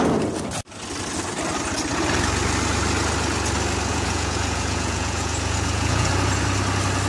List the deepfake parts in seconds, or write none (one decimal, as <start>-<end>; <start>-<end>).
3.9-6.1